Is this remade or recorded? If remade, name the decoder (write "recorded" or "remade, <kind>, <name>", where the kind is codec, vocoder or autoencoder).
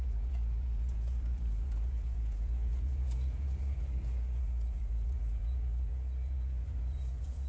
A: remade, vocoder, Vocos